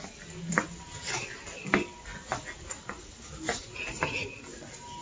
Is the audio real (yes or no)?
yes